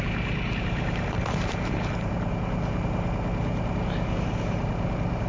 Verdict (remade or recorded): recorded